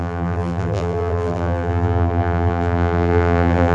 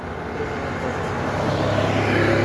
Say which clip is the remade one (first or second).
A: first